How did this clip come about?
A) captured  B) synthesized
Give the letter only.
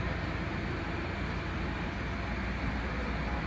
A